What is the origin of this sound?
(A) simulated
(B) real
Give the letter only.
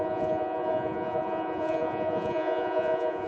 A